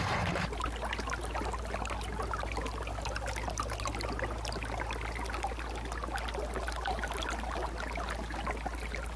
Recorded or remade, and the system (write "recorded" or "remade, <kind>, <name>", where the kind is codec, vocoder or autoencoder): recorded